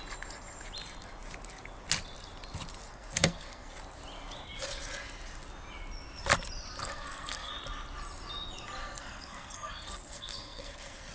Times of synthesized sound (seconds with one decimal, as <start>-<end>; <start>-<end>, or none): 2.9-3.7; 6.8-7.5; 8.8-11.1